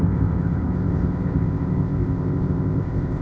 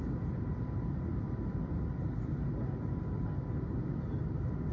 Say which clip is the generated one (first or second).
first